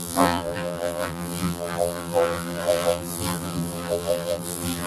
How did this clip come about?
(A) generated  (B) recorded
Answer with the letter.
A